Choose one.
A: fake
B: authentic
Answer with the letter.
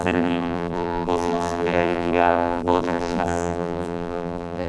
A